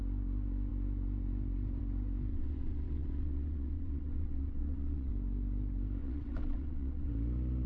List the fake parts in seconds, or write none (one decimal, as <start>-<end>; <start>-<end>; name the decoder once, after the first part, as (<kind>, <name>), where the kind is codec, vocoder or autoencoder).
2.3-5.1 (vocoder, WaveNeXt); 6.0-7.1